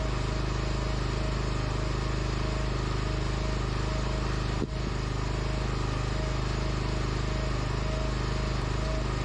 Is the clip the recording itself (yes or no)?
yes